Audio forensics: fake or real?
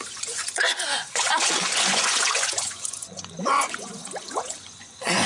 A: fake